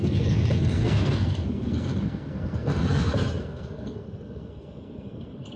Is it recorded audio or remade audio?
remade